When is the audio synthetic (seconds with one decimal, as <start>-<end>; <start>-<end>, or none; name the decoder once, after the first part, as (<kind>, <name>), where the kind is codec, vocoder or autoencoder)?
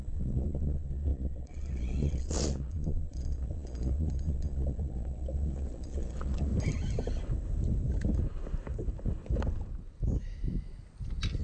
0.0-6.5 (vocoder, Vocos)